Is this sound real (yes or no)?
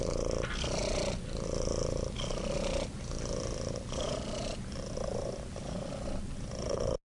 yes